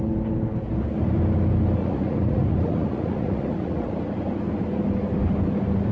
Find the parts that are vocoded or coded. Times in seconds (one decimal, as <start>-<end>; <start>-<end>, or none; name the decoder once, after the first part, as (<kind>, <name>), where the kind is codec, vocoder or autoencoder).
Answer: 1.8-3.9 (vocoder, Vocos)